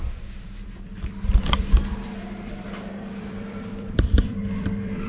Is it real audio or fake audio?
fake